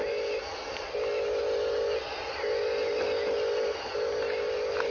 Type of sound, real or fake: real